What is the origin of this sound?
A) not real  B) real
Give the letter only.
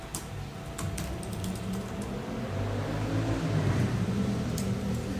B